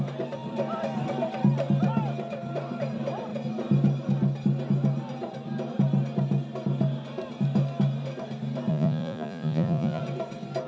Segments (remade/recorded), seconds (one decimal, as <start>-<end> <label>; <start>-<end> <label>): 0.0-8.7 recorded; 8.7-10.0 remade; 10.0-10.7 recorded